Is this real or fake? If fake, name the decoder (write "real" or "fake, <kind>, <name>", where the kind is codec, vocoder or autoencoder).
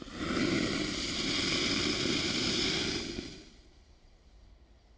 fake, vocoder, BigVGAN v2